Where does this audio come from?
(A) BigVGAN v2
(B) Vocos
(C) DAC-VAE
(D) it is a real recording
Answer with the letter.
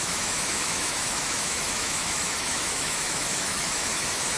C